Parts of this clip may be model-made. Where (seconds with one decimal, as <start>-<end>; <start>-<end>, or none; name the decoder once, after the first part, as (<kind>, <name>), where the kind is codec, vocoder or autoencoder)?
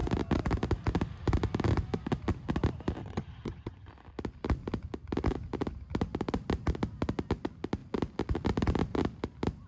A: 3.0-3.9 (vocoder, HiFi-GAN)